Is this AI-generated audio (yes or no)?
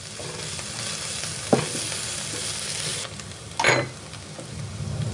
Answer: no